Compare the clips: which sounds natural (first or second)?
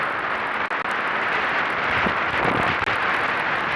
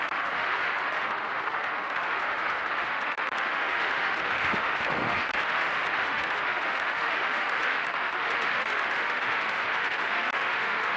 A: first